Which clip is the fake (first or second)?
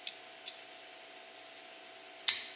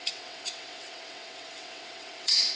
second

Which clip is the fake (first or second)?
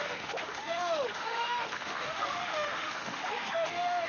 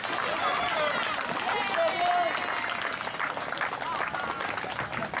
first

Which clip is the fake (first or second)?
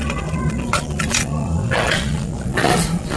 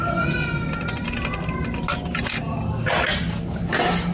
first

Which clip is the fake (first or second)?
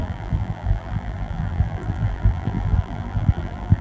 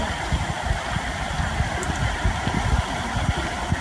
first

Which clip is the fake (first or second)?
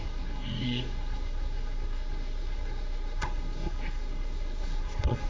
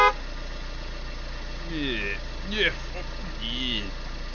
first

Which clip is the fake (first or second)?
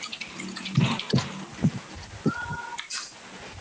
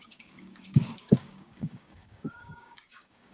second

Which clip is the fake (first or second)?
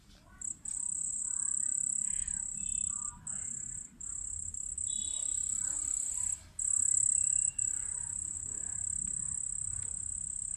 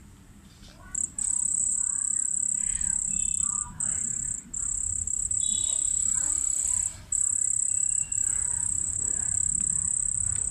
second